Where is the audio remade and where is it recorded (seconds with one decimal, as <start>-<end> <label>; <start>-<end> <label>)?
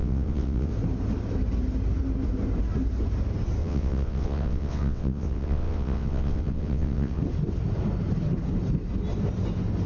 0.0-0.7 remade; 0.7-3.6 recorded; 3.6-7.2 remade; 7.2-9.9 recorded